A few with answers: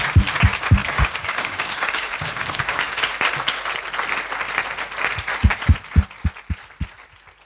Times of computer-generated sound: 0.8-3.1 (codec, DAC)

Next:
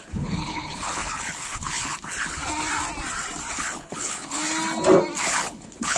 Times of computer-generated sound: 0.0-2.4 (codec, HILCodec); 3.5-4.4; 5.2-6.0

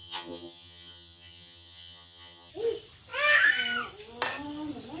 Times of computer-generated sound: 0.0-2.5 (vocoder, HiFi-GAN)

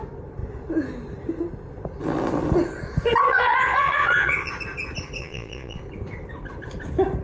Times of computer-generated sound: 3.3-4.5 (vocoder, Vocos); 5.2-5.8